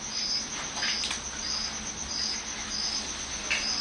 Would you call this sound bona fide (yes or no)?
yes